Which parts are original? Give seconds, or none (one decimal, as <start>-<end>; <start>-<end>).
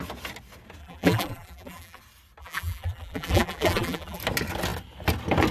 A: 0.0-0.8; 2.0-2.4; 4.2-5.5